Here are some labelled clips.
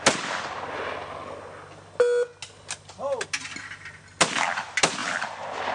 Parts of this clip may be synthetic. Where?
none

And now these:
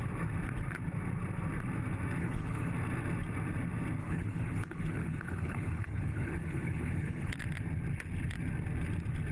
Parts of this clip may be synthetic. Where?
2.2-2.7 (codec, HILCodec); 4.0-7.3

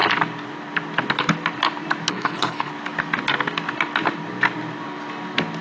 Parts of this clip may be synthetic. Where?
2.1-2.7 (codec, HILCodec)

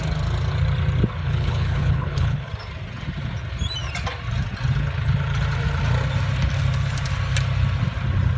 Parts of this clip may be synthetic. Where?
1.2-2.5 (codec, HILCodec)

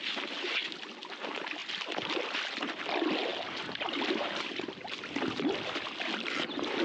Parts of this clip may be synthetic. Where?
none